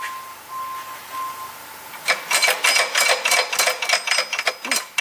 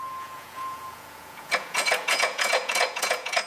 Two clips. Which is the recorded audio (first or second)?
first